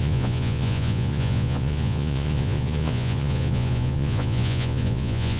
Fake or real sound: fake